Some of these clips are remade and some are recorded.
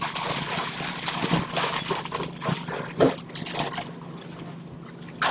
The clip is recorded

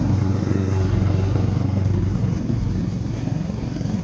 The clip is remade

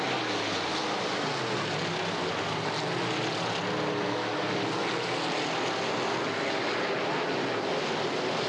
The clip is recorded